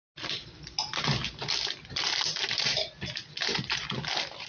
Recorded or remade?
recorded